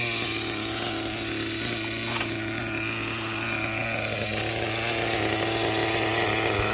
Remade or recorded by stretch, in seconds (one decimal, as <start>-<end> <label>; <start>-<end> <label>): 0.0-6.7 recorded